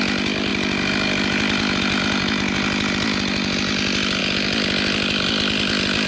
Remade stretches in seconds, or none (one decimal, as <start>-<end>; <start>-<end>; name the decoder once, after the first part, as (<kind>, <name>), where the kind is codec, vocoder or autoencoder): none